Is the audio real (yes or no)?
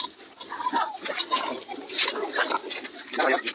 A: yes